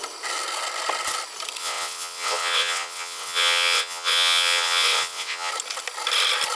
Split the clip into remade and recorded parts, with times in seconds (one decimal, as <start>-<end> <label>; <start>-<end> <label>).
0.0-1.6 recorded; 1.6-5.5 remade; 5.5-6.5 recorded